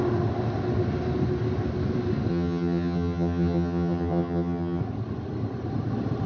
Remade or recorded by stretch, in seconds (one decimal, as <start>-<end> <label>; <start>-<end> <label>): 0.0-2.3 recorded; 2.3-4.8 remade; 4.8-6.3 recorded